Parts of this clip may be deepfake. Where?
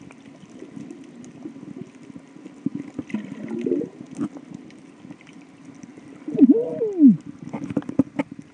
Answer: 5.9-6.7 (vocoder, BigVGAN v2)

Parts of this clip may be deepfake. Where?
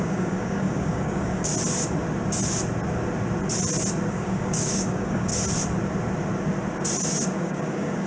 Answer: 0.0-1.5 (codec, DAC); 4.1-5.3; 7.4-8.1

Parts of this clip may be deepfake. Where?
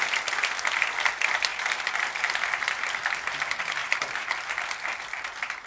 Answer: 1.5-2.3 (vocoder, BigVGAN v2); 3.8-4.3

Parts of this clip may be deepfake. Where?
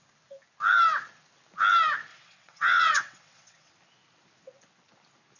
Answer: 2.1-3.7 (vocoder, WaveNeXt)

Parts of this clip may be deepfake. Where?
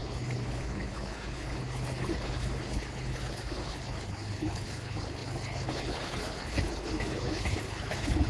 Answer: 0.0-8.3 (codec, HILCodec)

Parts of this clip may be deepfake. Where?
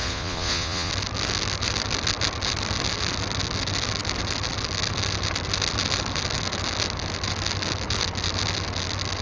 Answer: 0.0-0.9 (vocoder, Vocos)